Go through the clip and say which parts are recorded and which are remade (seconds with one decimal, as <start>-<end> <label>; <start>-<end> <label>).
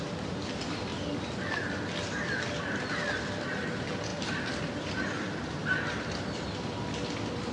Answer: 0.0-0.9 remade; 0.9-2.6 recorded; 2.6-7.5 remade